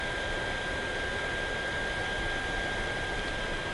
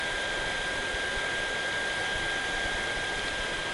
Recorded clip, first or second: first